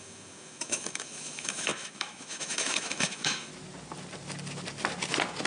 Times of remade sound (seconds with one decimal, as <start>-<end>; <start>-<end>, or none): 0.0-3.5